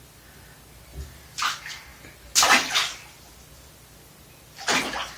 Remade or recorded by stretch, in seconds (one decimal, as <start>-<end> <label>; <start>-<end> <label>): 0.0-0.9 recorded; 0.9-1.4 remade; 1.4-5.2 recorded